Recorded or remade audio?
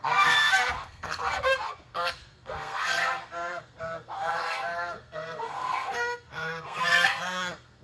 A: remade